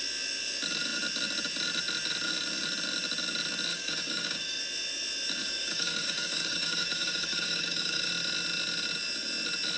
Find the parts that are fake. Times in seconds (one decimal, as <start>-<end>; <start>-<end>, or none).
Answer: 3.7-4.6; 5.4-8.1